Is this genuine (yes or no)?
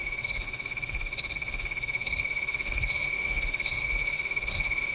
no